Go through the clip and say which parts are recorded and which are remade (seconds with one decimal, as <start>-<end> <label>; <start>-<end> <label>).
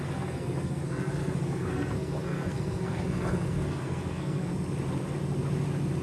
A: 0.0-4.5 remade; 4.5-6.0 recorded